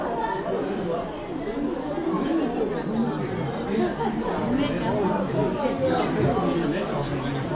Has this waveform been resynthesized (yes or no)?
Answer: no